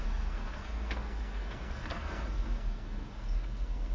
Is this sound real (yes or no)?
no